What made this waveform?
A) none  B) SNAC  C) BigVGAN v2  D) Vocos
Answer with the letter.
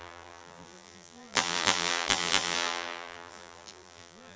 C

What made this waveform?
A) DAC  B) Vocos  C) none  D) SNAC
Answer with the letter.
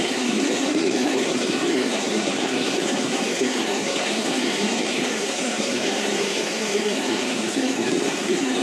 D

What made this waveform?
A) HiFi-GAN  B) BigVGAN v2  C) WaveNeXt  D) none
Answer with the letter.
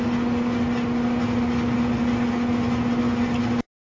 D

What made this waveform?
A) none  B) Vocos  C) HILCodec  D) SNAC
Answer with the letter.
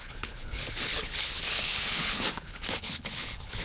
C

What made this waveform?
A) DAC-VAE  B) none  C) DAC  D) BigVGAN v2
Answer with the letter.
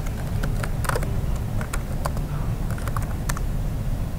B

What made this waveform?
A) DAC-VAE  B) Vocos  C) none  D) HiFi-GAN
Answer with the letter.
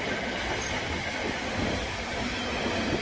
C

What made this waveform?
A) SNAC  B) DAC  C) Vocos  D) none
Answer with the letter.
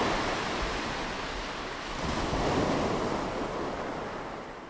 D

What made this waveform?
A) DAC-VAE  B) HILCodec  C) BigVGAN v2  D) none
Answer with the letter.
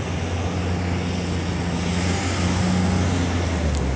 D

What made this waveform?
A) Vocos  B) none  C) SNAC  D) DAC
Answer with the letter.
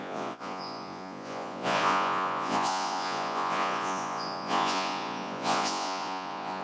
A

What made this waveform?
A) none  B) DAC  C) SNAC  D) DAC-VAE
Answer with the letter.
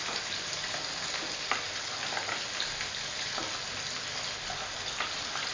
A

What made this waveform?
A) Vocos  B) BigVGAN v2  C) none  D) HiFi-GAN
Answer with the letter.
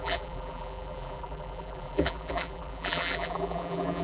B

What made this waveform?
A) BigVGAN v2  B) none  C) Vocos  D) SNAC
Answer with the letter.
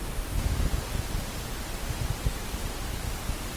B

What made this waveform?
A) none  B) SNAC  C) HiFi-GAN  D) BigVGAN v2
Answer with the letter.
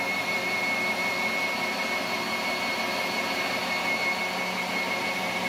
A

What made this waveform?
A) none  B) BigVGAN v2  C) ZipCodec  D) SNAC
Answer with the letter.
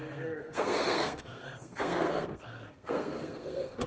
D